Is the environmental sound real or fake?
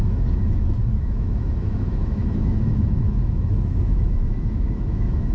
fake